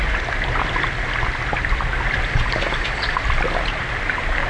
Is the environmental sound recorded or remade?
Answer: recorded